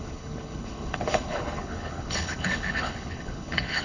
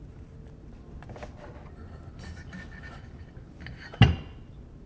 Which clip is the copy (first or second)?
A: first